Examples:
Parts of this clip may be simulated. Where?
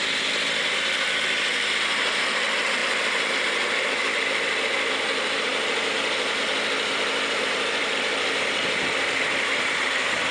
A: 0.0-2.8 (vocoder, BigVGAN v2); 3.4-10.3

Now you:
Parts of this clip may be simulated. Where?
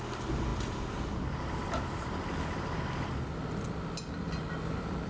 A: none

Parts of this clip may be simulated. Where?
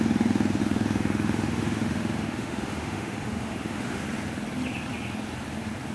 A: 0.6-4.0 (autoencoder, DAC-VAE)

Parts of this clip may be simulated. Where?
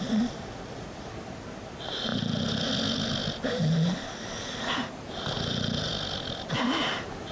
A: none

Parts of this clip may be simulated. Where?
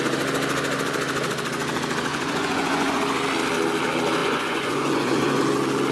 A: 2.1-3.0 (vocoder, Vocos); 4.2-5.4